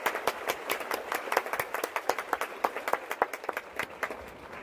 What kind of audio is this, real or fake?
real